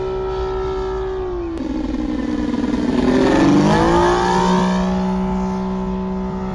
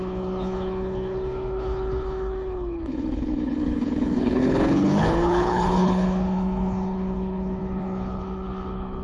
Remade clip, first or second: second